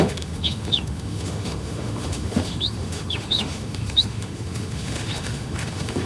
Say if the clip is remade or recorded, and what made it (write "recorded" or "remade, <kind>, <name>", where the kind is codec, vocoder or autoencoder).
remade, autoencoder, DAC-VAE